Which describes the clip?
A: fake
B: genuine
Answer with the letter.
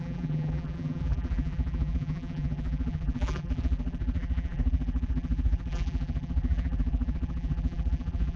A